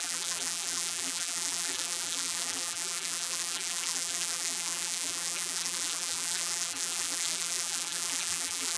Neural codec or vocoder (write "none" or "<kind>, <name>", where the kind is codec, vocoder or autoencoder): vocoder, BigVGAN v2